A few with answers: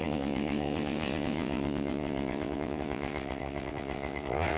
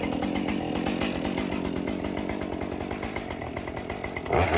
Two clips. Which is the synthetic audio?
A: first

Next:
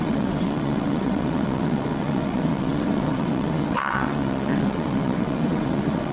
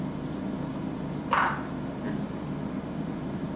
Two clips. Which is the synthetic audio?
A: first